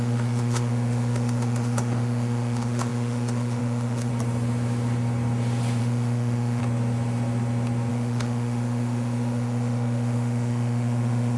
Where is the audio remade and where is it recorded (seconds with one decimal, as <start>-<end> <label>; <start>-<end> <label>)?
0.0-4.1 remade; 4.1-5.8 recorded; 5.8-6.6 remade; 6.6-7.9 recorded; 7.9-11.4 remade